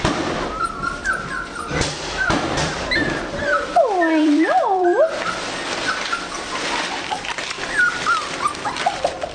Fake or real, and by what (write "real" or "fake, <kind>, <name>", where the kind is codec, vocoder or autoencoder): fake, vocoder, BigVGAN v2